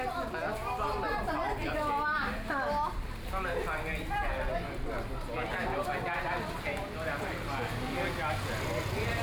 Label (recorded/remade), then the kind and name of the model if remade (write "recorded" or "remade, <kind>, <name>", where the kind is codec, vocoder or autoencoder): recorded